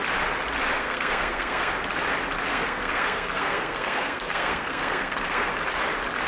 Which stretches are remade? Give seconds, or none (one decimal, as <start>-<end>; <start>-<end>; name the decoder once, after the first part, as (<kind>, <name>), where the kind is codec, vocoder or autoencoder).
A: 0.8-1.7 (codec, SNAC); 2.5-5.5